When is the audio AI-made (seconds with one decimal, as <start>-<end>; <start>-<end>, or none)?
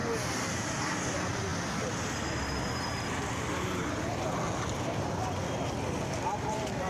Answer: none